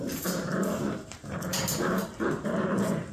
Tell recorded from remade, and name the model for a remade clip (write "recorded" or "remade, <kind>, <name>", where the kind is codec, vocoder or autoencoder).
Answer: remade, vocoder, BigVGAN v2